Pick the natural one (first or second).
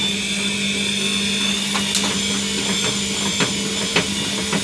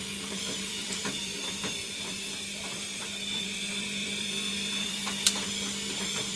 first